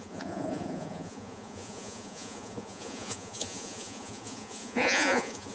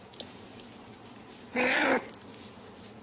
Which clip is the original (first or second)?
second